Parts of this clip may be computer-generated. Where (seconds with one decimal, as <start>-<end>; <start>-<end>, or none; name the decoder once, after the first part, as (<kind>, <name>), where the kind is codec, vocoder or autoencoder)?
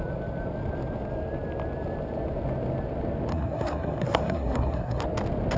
3.3-5.0 (codec, SNAC)